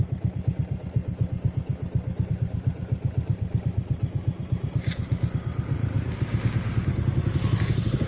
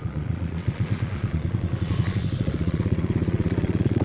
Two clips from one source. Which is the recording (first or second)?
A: first